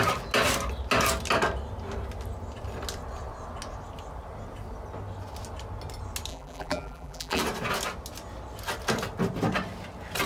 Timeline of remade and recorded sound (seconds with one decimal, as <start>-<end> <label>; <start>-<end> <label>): 0.0-6.3 recorded; 6.3-7.4 remade; 7.4-10.3 recorded